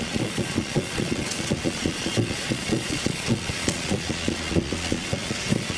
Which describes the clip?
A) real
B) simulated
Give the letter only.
B